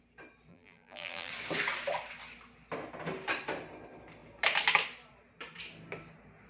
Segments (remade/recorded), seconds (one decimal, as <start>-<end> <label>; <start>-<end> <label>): 0.0-0.5 recorded; 0.5-1.3 remade; 1.3-6.5 recorded